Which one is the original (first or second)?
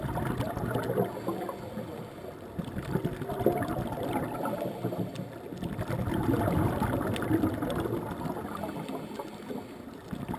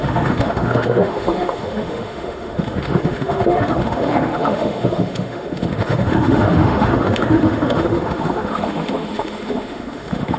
first